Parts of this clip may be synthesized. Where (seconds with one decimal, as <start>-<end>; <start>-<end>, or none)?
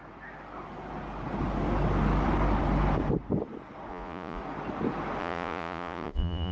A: 3.9-4.4; 5.2-6.5